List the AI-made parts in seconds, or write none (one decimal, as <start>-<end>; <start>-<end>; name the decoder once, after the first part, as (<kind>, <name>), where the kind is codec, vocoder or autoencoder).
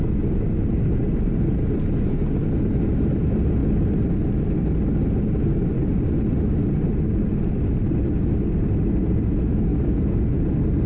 none